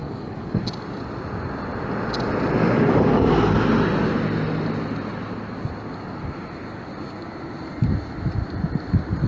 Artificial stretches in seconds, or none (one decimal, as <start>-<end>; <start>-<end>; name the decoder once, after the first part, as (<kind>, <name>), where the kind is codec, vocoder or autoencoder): 0.0-0.6 (codec, DAC); 2.6-3.2